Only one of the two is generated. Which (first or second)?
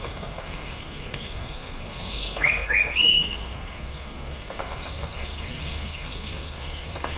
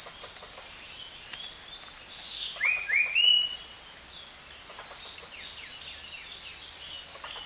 first